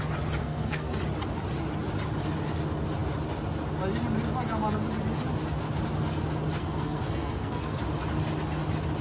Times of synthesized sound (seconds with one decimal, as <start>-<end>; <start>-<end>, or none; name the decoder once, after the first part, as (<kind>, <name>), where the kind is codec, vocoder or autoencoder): 0.4-1.0 (codec, SNAC); 6.6-7.8